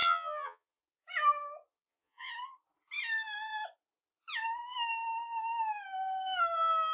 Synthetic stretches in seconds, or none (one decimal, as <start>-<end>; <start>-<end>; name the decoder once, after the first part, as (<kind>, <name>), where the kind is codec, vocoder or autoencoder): 0.0-0.8 (vocoder, Vocos); 1.7-2.3

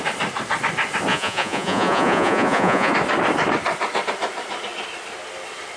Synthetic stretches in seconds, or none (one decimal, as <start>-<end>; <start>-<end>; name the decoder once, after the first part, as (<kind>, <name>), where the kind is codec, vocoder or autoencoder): 1.1-2.9 (vocoder, Vocos)

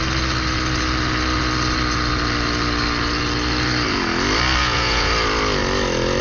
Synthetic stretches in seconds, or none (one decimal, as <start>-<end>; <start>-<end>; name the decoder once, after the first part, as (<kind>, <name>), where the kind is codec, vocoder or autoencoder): 4.6-5.1 (vocoder, Vocos)

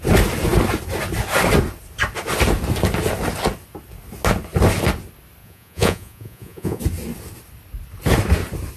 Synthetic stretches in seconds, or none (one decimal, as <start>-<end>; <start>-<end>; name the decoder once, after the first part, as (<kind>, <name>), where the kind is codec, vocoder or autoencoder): 5.4-6.8 (vocoder, Vocos)

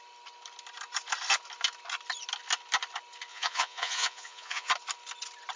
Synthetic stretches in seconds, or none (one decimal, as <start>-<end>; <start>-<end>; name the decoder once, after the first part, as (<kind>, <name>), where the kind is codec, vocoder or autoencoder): 3.3-4.7 (vocoder, Vocos)

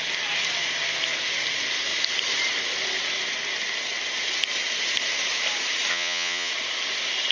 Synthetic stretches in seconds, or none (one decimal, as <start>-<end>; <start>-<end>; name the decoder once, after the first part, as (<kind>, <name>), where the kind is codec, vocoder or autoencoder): 5.9-6.5 (vocoder, Vocos)

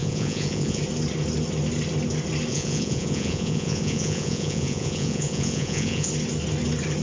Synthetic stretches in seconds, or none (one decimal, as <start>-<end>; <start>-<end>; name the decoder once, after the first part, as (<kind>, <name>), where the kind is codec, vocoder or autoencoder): 0.0-0.8 (vocoder, Vocos); 2.5-6.1